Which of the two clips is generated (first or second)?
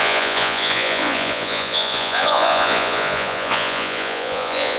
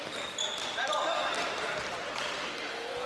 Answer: first